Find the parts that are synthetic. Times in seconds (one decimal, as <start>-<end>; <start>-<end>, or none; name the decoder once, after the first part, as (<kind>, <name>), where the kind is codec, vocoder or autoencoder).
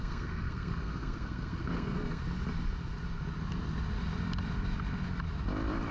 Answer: 0.0-2.2 (codec, SNAC)